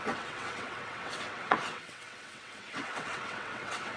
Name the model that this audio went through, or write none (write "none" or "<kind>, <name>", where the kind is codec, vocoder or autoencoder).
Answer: vocoder, WaveNeXt